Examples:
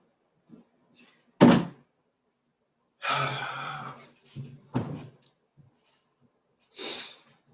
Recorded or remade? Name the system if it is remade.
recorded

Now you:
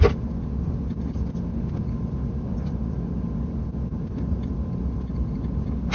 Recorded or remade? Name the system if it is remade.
recorded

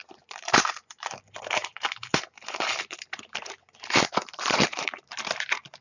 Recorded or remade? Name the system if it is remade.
remade, vocoder, BigVGAN v2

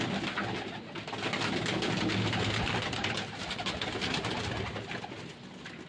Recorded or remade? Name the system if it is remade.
recorded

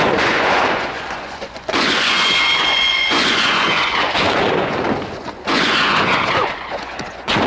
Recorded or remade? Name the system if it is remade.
remade, vocoder, Vocos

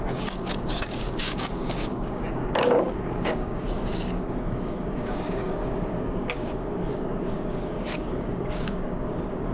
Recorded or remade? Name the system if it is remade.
remade, codec, DAC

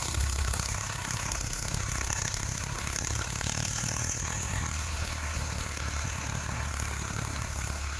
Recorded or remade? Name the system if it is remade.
remade, codec, SNAC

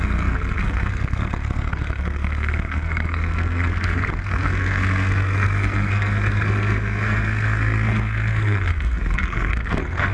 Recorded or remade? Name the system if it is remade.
remade, codec, SNAC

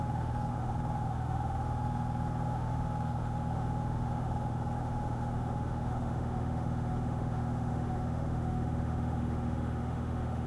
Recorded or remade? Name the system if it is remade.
remade, autoencoder, DAC-VAE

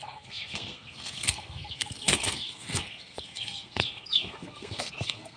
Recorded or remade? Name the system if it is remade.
remade, codec, SNAC